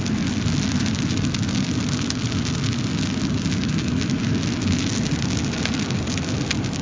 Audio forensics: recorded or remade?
recorded